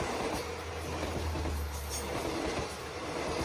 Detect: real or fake real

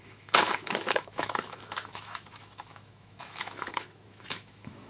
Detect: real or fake fake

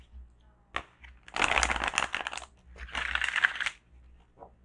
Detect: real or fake real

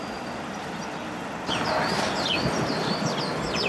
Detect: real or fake real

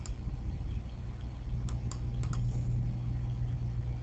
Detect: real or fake real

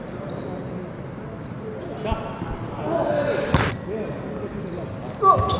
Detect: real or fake real